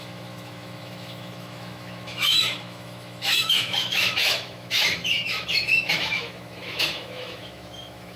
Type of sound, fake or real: fake